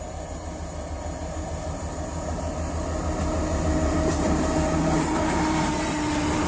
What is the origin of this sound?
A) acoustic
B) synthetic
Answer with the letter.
A